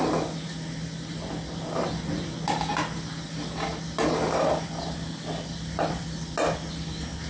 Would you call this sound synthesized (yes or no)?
no